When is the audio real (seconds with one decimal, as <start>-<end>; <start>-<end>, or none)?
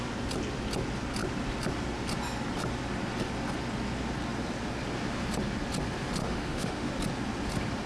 0.0-6.2; 6.9-7.9